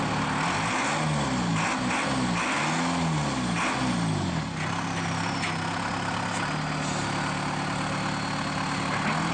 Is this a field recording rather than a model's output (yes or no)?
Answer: yes